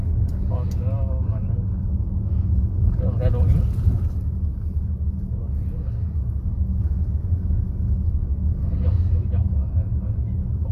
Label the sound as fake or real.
real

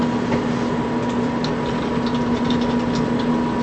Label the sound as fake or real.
real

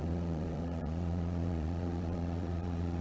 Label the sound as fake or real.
fake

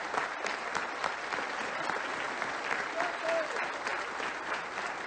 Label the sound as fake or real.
real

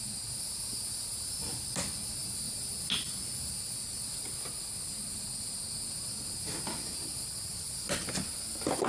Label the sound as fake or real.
real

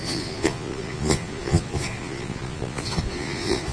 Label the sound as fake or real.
fake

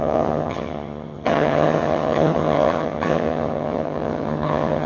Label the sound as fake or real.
fake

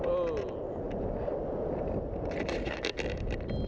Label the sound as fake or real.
real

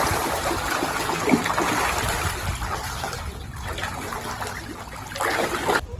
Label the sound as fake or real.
real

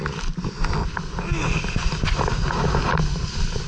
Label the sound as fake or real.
real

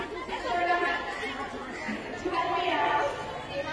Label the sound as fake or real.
real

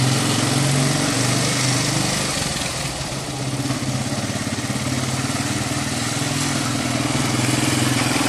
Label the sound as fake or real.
real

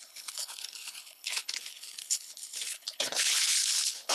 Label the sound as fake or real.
fake